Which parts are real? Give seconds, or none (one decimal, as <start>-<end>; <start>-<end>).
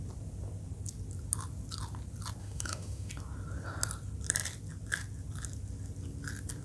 0.0-2.4; 3.1-6.6